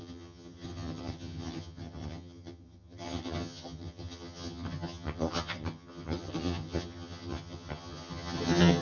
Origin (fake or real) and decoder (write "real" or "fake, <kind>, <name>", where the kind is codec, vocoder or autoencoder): fake, vocoder, HiFi-GAN